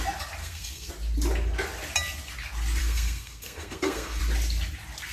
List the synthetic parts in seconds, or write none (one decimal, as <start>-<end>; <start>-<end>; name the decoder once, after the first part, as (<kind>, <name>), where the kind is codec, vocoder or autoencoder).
0.4-0.9 (codec, SNAC); 2.8-4.2